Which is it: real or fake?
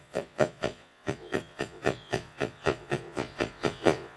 fake